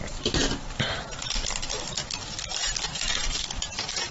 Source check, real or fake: fake